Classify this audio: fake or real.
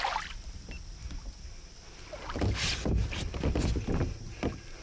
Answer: real